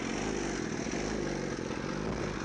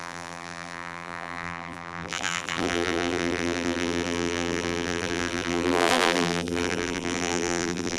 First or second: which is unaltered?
first